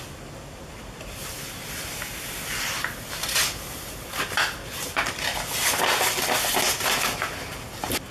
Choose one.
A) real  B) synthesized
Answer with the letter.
A